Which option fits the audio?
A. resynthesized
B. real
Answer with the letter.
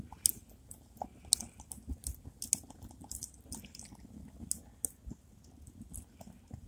B